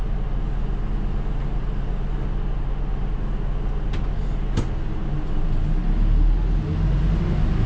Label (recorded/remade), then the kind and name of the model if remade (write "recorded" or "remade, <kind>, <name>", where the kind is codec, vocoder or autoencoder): recorded